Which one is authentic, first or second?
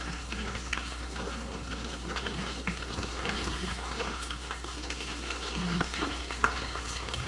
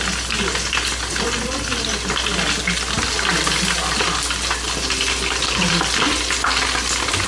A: second